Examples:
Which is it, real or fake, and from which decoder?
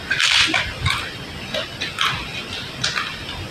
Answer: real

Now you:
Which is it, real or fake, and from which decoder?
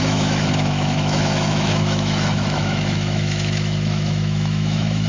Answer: fake, autoencoder, DAC-VAE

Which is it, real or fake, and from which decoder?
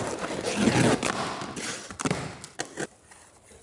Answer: real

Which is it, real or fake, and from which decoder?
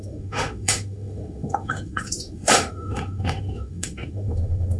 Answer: fake, autoencoder, DAC-VAE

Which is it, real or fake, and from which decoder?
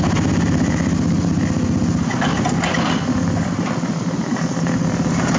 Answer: real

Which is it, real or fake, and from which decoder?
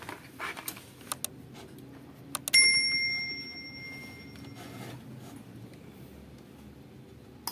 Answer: real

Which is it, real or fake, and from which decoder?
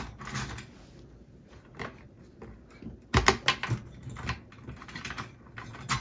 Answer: real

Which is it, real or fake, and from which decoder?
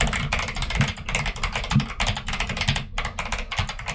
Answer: real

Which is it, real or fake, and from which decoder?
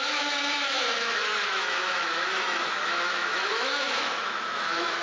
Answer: fake, autoencoder, DAC-VAE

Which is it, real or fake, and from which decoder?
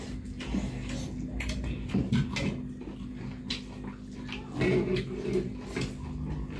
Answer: real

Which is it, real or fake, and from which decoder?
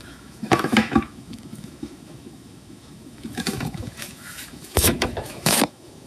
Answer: fake, autoencoder, DAC-VAE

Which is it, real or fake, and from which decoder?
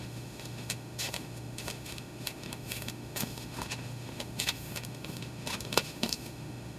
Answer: fake, autoencoder, DAC-VAE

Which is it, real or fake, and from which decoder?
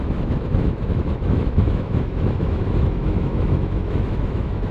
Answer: fake, autoencoder, DAC-VAE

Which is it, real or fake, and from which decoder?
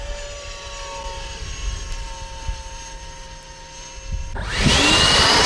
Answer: real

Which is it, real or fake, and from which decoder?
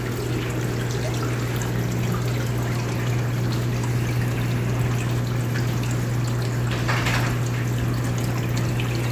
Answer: real